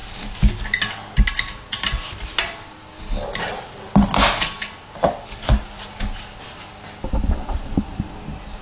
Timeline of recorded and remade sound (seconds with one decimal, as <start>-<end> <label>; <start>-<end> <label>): 0.0-8.6 recorded